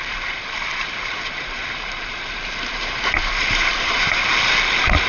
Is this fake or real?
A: fake